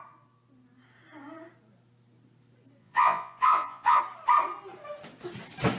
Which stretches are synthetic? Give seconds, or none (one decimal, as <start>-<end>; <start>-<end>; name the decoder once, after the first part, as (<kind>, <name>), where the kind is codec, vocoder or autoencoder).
2.8-4.0 (vocoder, Vocos)